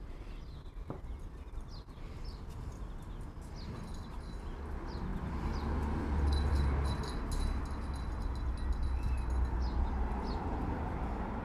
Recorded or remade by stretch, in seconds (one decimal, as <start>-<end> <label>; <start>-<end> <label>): 0.0-11.4 recorded